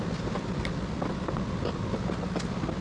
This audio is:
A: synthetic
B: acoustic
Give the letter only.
B